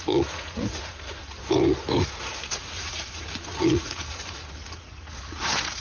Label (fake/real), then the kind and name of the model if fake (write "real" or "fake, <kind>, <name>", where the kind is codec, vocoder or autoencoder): fake, vocoder, Vocos